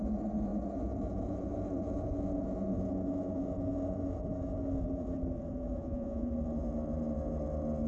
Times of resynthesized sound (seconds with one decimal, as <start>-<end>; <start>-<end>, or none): 5.8-6.3